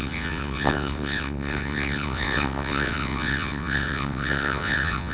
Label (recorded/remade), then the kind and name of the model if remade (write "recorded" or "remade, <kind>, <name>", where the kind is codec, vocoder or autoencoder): remade, vocoder, WaveNeXt